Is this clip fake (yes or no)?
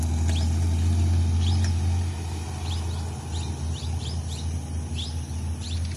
no